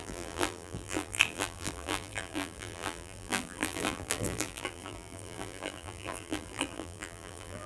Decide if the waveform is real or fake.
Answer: fake